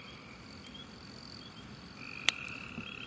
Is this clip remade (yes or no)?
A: yes